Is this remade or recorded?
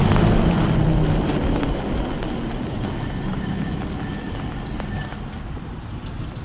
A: recorded